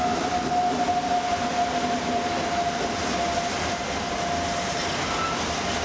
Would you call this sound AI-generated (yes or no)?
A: no